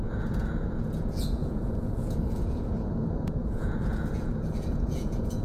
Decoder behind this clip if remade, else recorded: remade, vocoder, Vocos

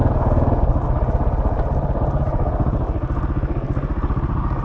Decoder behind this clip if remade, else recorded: recorded